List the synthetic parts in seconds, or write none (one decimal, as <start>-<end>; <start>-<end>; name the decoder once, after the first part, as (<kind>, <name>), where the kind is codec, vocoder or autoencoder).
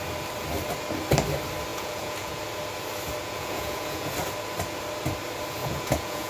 1.7-2.4 (vocoder, Vocos); 3.2-4.1; 5.6-6.3